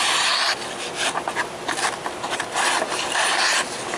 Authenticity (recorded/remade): recorded